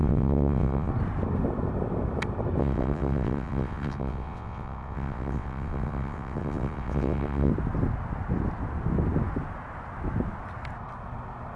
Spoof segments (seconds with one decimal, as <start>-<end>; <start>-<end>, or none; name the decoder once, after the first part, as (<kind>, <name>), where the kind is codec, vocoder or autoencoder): 0.0-0.9 (vocoder, WaveNeXt); 2.6-7.5